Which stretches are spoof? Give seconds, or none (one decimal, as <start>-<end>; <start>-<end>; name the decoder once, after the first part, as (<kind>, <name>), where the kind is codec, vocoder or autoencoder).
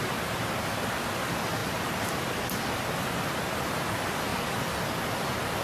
none